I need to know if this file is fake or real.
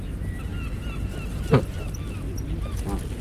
real